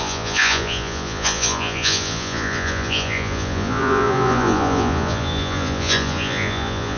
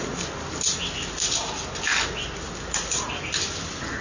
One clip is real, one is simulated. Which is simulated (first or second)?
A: first